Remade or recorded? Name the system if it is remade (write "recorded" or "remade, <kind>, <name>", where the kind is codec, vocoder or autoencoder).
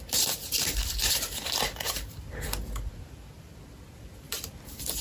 remade, vocoder, BigVGAN v2